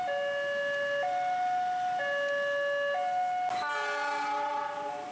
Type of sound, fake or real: real